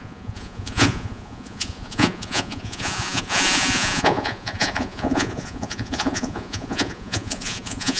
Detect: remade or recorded remade